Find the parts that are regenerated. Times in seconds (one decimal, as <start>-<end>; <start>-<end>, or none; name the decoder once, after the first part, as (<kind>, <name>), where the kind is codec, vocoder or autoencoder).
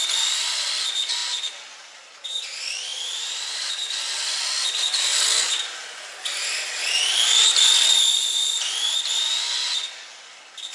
5.1-7.0 (vocoder, BigVGAN v2)